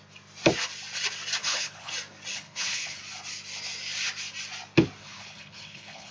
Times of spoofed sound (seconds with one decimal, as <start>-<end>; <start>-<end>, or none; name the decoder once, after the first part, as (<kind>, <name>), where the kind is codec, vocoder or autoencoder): 1.4-1.9 (codec, HILCodec); 2.3-3.0; 5.0-6.1